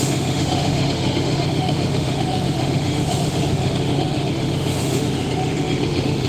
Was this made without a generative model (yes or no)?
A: no